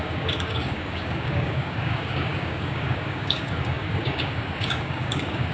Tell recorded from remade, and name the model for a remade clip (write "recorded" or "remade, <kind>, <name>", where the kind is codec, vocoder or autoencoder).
remade, codec, DAC